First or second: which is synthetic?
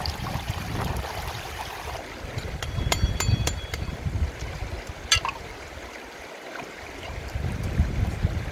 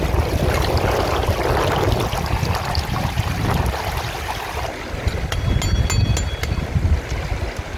first